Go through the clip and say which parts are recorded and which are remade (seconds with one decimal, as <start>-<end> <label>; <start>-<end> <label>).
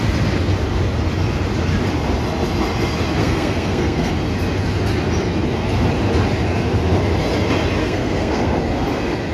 0.0-3.2 recorded; 3.2-4.1 remade; 4.1-7.8 recorded; 7.8-8.6 remade; 8.6-9.3 recorded